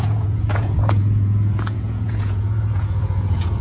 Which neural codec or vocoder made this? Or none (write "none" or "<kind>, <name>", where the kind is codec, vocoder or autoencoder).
vocoder, Vocos